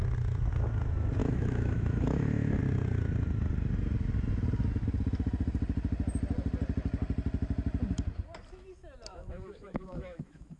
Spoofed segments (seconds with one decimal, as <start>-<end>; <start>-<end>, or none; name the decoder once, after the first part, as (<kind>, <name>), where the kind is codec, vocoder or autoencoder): 1.2-2.6 (autoencoder, DAC-VAE); 9.1-10.6